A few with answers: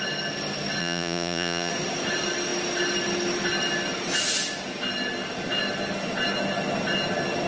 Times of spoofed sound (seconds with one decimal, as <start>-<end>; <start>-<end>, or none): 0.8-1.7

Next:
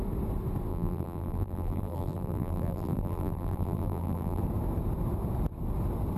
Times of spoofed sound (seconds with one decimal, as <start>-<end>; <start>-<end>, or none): 0.7-4.4

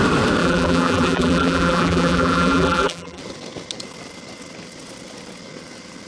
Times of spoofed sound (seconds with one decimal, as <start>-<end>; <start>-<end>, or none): 0.4-3.2

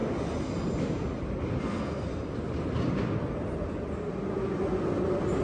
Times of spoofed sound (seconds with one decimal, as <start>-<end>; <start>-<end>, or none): 1.6-2.1